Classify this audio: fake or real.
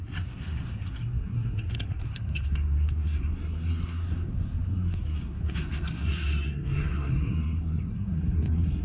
fake